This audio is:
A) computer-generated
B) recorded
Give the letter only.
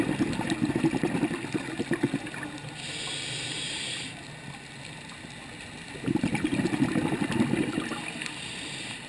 B